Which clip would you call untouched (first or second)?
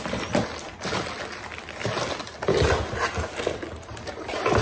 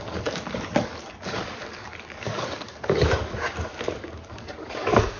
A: first